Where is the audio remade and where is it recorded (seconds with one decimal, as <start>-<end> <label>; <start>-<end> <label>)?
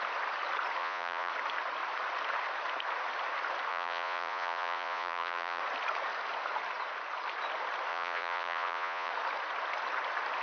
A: 0.0-0.8 recorded; 0.8-1.3 remade; 1.3-3.7 recorded; 3.7-5.6 remade; 5.6-7.9 recorded; 7.9-9.1 remade; 9.1-10.4 recorded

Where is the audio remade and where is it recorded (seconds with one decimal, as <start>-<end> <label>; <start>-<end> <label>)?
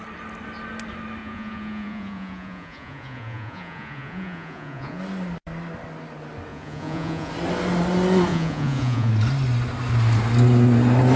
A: 0.0-1.2 recorded; 1.2-5.0 remade; 5.0-6.5 recorded; 6.5-7.3 remade; 7.3-8.3 recorded; 8.3-9.1 remade; 9.1-11.2 recorded